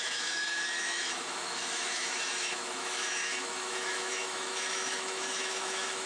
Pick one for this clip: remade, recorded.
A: remade